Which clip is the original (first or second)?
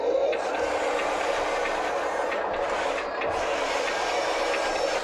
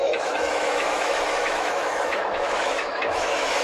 first